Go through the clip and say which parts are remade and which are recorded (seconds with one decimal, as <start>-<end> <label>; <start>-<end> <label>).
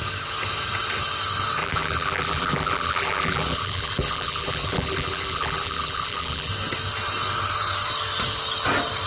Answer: 0.0-1.6 recorded; 1.6-6.5 remade; 6.5-9.1 recorded